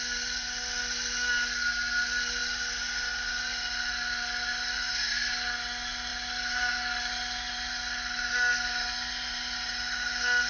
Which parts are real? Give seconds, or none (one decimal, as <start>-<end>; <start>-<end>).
0.0-10.5